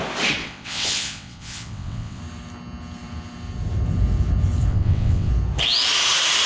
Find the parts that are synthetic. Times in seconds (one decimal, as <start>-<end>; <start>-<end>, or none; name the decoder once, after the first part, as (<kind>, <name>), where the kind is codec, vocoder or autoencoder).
0.4-2.2 (vocoder, WaveNeXt); 4.7-5.3